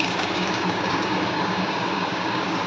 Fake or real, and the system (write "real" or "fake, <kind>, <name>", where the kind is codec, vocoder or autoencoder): fake, codec, DAC